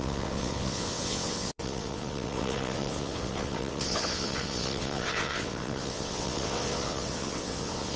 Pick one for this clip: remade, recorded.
remade